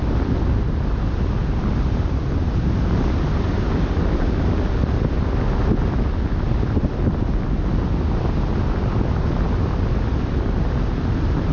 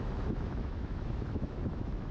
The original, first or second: first